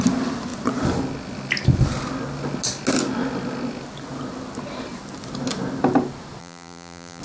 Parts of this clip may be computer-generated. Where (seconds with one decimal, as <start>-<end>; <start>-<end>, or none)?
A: 6.4-7.2